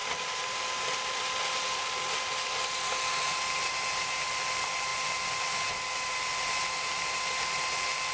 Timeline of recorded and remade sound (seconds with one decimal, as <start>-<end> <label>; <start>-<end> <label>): 0.0-8.1 recorded